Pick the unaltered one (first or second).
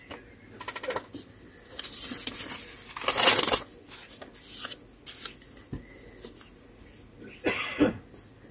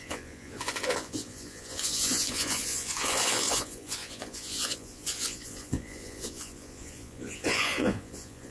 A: first